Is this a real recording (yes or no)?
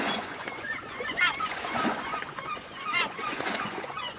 no